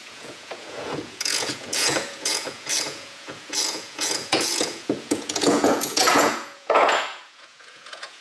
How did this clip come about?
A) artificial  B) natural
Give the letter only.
A